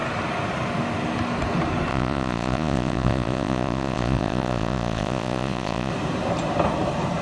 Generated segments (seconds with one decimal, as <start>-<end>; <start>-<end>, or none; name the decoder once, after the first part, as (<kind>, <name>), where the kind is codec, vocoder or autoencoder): 1.9-5.9 (vocoder, Vocos)